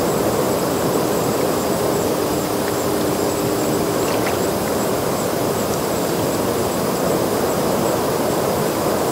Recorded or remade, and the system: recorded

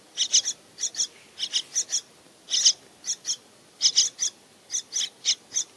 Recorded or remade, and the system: recorded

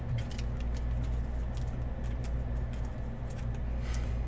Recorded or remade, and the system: recorded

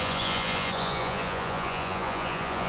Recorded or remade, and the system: remade, vocoder, Vocos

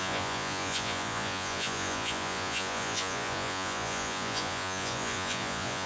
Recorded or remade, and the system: remade, vocoder, Vocos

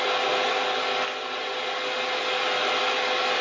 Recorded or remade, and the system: recorded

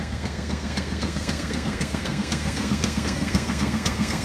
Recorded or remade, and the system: remade, codec, SNAC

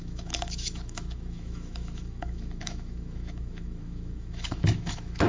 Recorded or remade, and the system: remade, autoencoder, DAC-VAE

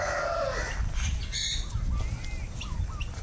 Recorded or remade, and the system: recorded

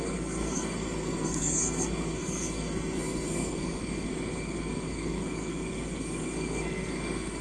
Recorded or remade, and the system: remade, codec, SNAC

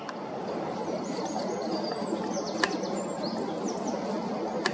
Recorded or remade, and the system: recorded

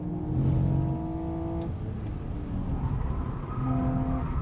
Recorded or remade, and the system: recorded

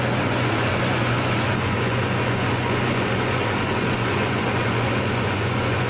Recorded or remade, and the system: remade, vocoder, Vocos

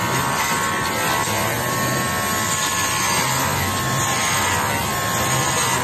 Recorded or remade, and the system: recorded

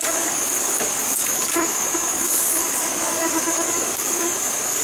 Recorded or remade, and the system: remade, codec, DAC